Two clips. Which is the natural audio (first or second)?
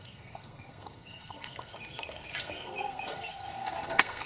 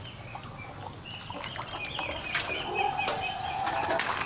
second